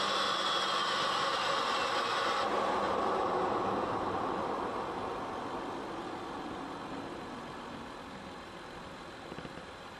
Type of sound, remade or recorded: recorded